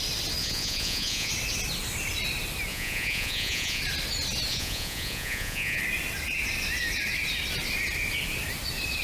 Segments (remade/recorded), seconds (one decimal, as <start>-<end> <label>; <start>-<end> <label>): 0.0-0.4 recorded; 0.4-1.3 remade; 1.3-2.7 recorded; 2.7-3.8 remade; 3.8-4.5 recorded; 4.5-5.8 remade; 5.8-9.0 recorded

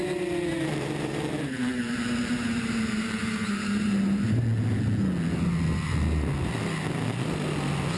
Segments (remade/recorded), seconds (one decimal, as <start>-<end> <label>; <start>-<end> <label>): 0.0-0.7 recorded; 0.7-4.4 remade; 4.4-8.0 recorded

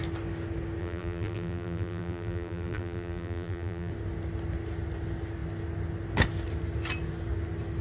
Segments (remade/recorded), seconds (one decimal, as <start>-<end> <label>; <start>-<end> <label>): 0.0-0.8 recorded; 0.8-3.9 remade; 3.9-7.8 recorded

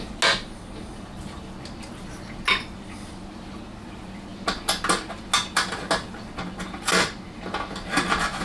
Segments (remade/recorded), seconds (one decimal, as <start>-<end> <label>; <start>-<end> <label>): 0.0-8.4 recorded

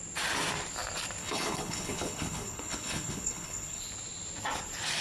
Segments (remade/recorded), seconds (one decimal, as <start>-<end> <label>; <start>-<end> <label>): 0.0-1.2 recorded; 1.2-3.8 remade; 3.8-5.0 recorded

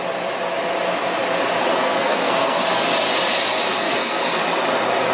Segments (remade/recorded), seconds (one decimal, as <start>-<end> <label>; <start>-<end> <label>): 0.0-1.7 recorded; 1.7-2.6 remade; 2.6-3.7 recorded; 3.7-4.4 remade; 4.4-5.1 recorded

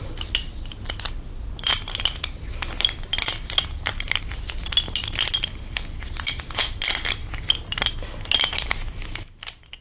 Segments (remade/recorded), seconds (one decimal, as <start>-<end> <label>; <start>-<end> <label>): 0.0-9.8 recorded